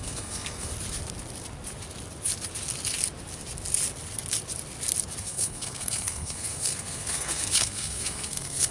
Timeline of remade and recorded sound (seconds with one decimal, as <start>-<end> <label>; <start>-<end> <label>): 0.0-0.7 remade; 0.7-5.2 recorded; 5.2-8.7 remade